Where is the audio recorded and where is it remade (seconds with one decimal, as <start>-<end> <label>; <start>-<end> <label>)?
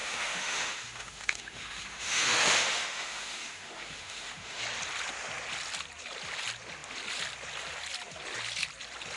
0.0-4.6 remade; 4.6-9.2 recorded